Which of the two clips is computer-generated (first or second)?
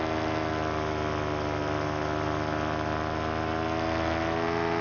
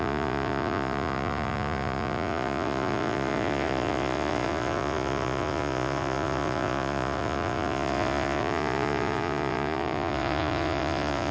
second